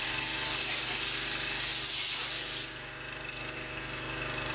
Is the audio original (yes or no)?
yes